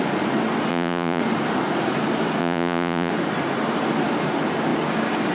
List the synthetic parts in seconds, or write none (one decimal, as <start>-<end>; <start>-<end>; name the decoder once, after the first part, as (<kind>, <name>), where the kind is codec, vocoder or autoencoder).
0.7-1.2 (vocoder, Vocos); 2.4-3.1